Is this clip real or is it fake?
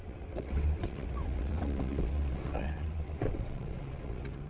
fake